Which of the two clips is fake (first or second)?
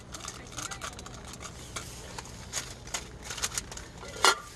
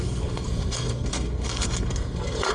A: second